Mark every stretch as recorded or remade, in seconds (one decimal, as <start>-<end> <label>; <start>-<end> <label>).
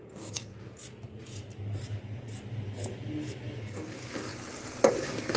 0.0-0.5 remade; 0.5-3.6 recorded; 3.6-4.3 remade; 4.3-4.9 recorded; 4.9-5.4 remade